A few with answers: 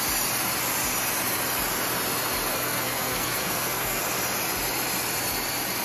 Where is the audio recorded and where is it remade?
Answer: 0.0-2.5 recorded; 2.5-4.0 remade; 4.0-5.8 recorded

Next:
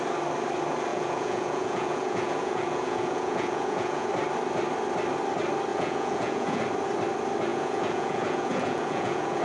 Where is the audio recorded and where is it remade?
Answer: 0.0-0.9 recorded; 0.9-4.1 remade; 4.1-5.7 recorded; 5.7-6.6 remade; 6.6-7.5 recorded; 7.5-9.4 remade

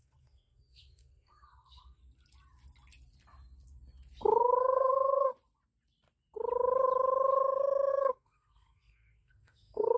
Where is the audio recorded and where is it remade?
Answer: 0.0-2.0 remade; 2.0-4.4 recorded; 4.4-5.3 remade; 5.3-7.9 recorded; 7.9-10.0 remade